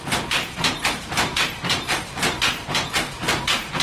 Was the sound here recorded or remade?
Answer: remade